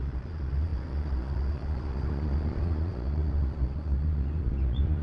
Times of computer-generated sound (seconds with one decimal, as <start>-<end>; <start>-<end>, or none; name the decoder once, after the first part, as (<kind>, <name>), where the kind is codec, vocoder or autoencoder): 0.0-5.0 (vocoder, Vocos)